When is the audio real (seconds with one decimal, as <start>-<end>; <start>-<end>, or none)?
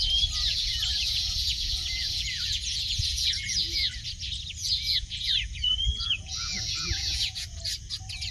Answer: 0.0-0.5; 4.1-4.6; 7.6-8.3